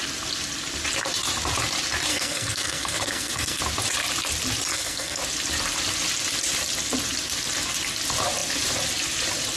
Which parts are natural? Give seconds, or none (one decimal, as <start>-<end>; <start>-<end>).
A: 0.0-2.1; 3.6-4.7; 5.2-9.6